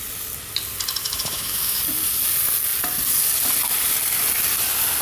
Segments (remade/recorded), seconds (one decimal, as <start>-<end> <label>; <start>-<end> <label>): 0.0-1.0 recorded; 1.0-1.8 remade; 1.8-5.0 recorded